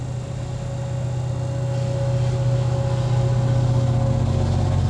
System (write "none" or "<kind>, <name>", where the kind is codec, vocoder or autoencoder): none